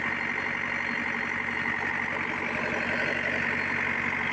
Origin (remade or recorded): recorded